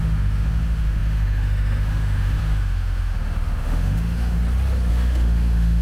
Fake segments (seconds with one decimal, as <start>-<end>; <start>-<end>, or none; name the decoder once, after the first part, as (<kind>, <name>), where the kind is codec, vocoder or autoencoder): 0.0-4.4 (autoencoder, DAC-VAE); 4.9-5.8

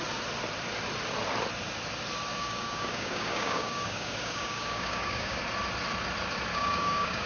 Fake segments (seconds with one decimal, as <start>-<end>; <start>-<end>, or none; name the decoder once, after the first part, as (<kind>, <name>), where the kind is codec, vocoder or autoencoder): 2.3-5.4 (codec, DAC); 6.5-7.3